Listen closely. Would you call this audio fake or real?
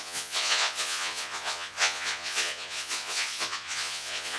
fake